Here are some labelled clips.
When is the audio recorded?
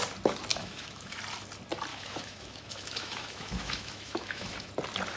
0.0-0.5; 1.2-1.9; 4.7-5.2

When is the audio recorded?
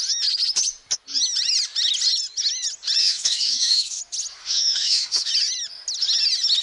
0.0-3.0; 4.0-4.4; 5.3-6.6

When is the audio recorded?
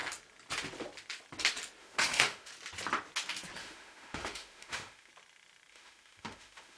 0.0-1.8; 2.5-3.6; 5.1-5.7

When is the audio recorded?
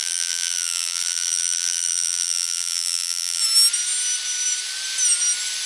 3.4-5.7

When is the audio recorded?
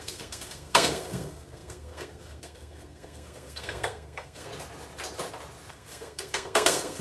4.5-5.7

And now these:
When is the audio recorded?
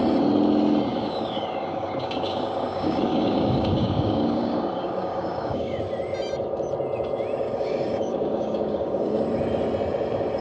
0.0-0.9; 5.8-7.4; 9.2-10.4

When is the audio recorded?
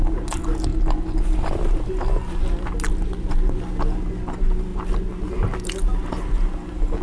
0.0-7.0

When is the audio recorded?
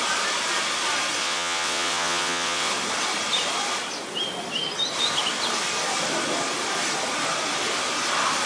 0.0-1.2; 2.7-8.5